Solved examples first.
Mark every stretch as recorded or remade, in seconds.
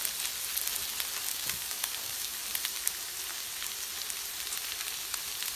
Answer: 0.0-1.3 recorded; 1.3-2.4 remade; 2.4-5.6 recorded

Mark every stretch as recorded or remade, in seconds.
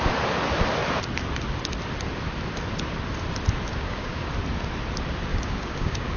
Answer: 0.0-3.7 recorded; 3.7-4.3 remade; 4.3-5.3 recorded; 5.3-6.2 remade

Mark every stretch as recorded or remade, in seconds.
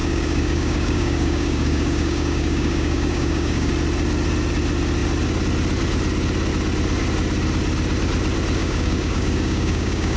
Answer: 0.0-3.7 remade; 3.7-8.6 recorded; 8.6-10.2 remade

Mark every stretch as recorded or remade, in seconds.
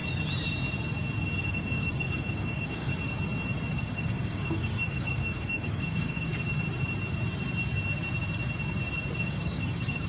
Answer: 0.0-1.4 recorded; 1.4-2.9 remade; 2.9-3.8 recorded; 3.8-6.3 remade; 6.3-9.2 recorded; 9.2-10.1 remade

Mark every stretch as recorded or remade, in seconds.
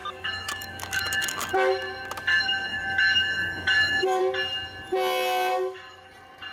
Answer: 0.0-1.5 remade; 1.5-2.3 recorded; 2.3-4.2 remade; 4.2-5.5 recorded; 5.5-6.1 remade; 6.1-6.5 recorded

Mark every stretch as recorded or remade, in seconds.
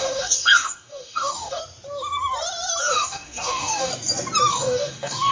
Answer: 0.0-1.6 remade; 1.6-2.8 recorded; 2.8-3.9 remade; 3.9-4.5 recorded; 4.5-5.3 remade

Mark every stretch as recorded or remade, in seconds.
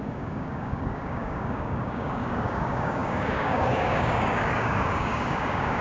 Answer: 0.0-5.8 remade